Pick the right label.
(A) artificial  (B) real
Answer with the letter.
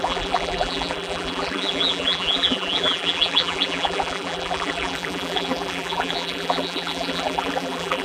A